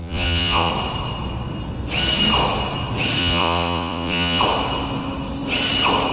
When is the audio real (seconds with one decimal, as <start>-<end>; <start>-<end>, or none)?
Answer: 0.7-3.2; 4.4-6.1